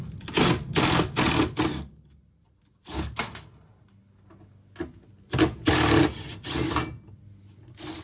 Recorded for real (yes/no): yes